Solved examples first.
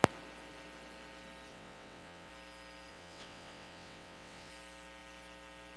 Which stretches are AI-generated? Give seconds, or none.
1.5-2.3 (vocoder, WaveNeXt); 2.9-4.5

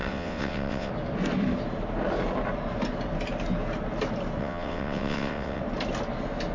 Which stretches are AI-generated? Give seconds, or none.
0.0-0.9 (vocoder, WaveNeXt); 4.4-5.6

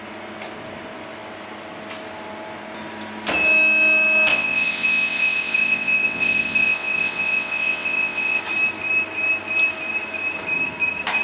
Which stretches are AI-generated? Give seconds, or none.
4.3-8.4 (vocoder, WaveNeXt)

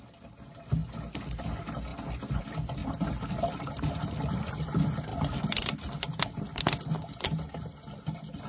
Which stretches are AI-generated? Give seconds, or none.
none